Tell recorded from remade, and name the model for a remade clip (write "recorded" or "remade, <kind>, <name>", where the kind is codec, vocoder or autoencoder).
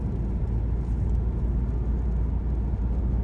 recorded